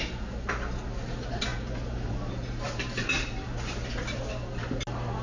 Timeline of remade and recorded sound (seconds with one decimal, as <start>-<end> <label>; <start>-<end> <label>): 0.0-5.2 recorded